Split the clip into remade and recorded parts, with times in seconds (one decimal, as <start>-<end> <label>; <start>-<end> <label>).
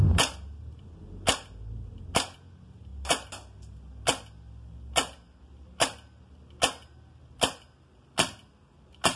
0.0-9.2 recorded